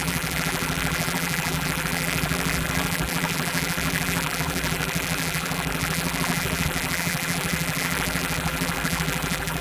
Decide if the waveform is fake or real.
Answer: fake